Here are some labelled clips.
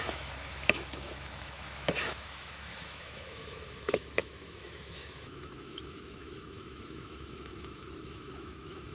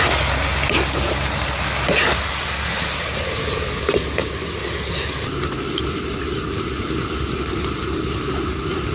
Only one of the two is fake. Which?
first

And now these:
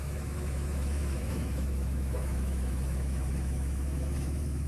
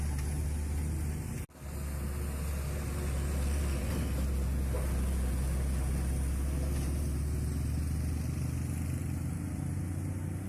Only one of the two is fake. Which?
first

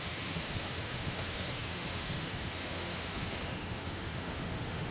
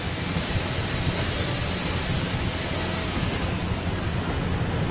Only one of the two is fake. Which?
first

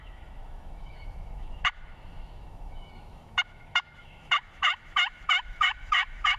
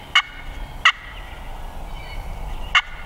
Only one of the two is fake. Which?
first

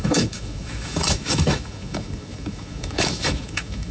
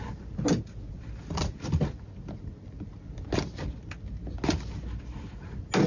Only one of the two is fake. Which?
first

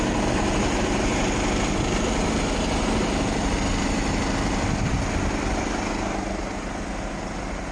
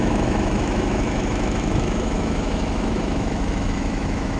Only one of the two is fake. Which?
second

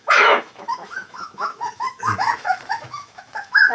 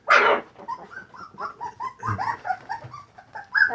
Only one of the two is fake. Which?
first